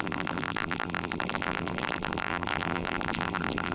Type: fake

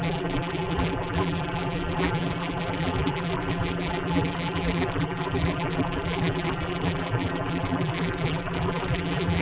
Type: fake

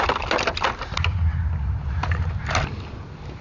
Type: real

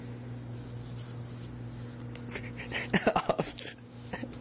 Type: real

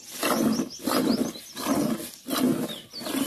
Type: real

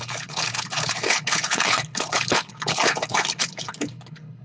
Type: fake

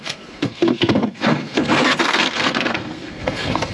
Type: fake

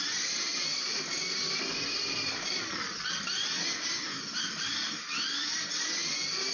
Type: real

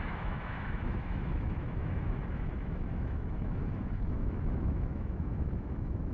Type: fake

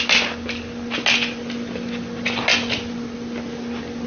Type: real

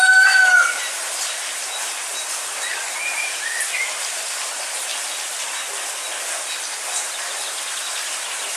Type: real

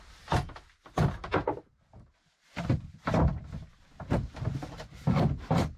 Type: real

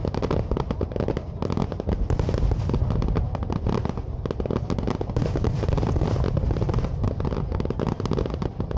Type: real